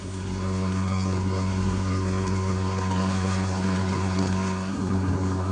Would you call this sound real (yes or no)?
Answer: no